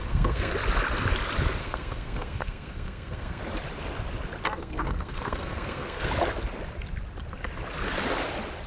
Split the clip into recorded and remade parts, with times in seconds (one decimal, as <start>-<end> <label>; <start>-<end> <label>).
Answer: 0.0-0.5 remade; 0.5-1.6 recorded; 1.6-3.4 remade; 3.4-4.6 recorded; 4.6-6.1 remade; 6.1-8.7 recorded